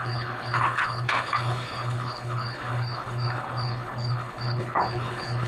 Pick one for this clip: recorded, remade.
remade